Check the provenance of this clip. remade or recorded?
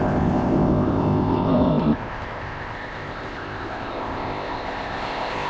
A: remade